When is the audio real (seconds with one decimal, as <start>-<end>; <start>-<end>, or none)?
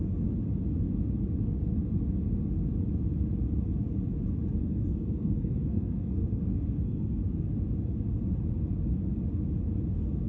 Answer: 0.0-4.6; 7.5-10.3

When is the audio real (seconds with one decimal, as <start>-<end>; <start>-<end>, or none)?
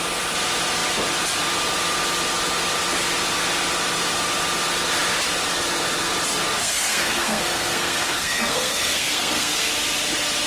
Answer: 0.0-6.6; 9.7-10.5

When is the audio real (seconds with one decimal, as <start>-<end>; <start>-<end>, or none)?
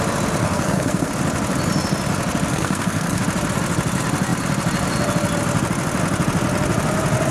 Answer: 0.0-0.4; 1.1-2.5; 3.2-7.3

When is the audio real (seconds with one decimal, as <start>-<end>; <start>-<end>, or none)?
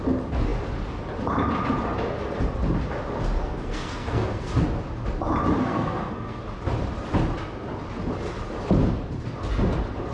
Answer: 0.0-3.4; 4.5-5.6; 6.4-10.1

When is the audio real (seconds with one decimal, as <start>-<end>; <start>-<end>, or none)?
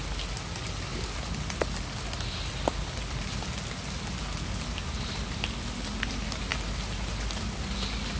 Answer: 0.0-8.2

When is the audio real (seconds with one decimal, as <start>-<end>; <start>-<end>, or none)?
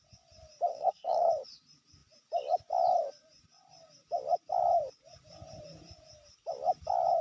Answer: 0.0-0.7; 1.3-7.2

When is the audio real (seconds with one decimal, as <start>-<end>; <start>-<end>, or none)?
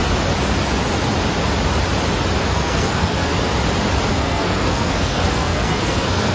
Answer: 0.0-2.4; 3.3-4.1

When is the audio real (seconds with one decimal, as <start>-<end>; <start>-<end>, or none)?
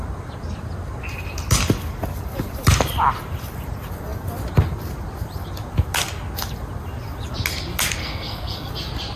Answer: 0.0-8.0; 8.7-9.2